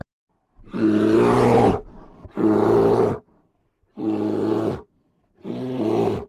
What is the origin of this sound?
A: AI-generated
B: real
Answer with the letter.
B